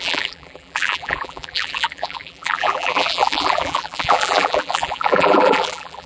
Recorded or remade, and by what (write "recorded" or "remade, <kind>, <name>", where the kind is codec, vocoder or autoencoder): remade, vocoder, BigVGAN v2